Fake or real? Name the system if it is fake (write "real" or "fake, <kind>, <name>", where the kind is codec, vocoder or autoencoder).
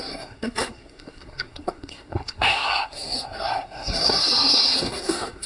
fake, codec, SNAC